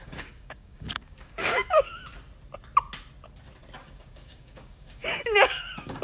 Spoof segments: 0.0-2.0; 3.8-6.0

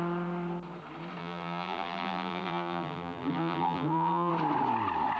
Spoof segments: 1.2-4.3

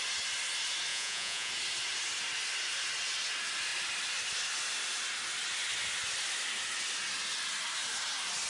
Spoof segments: 0.9-1.5

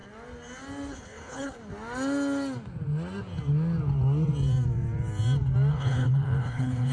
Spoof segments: 0.9-1.6; 5.7-6.9

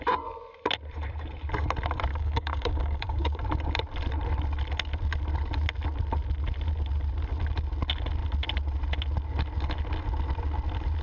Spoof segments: 2.1-3.4

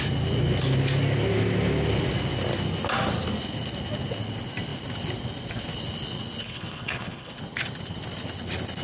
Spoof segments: 6.4-7.4

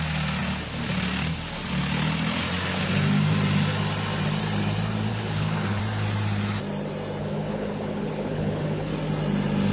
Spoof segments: 5.1-5.8; 7.2-8.9

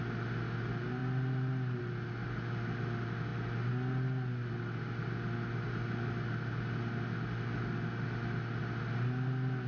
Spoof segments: none